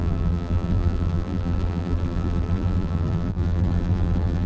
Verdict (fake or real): fake